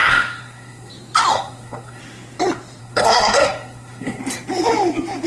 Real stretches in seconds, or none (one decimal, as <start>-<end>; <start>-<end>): 0.9-1.3; 2.0-2.8; 4.2-5.3